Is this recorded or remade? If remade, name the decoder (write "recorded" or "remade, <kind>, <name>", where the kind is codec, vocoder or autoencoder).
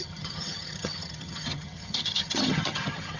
remade, vocoder, HiFi-GAN